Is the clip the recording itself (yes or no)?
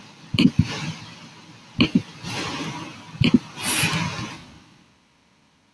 yes